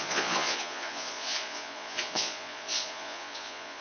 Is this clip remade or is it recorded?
remade